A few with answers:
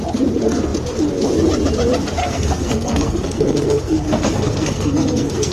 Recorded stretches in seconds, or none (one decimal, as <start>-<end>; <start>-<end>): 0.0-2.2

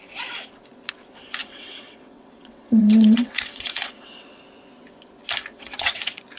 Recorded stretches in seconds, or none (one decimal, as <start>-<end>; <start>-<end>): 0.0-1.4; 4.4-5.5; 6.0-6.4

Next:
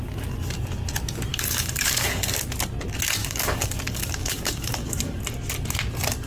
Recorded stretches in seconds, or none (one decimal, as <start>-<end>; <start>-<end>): 0.0-1.3; 2.4-3.2; 5.2-6.3

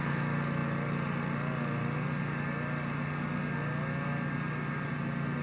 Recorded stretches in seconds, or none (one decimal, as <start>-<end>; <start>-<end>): 0.0-5.4

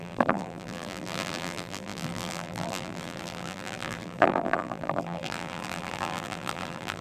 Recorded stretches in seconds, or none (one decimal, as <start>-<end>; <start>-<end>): none

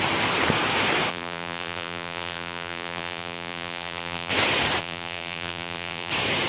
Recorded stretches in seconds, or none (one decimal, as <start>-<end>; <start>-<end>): 0.0-1.1; 4.3-4.8; 6.1-6.5

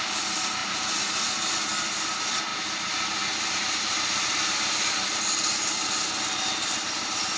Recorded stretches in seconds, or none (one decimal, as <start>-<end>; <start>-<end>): 0.0-7.4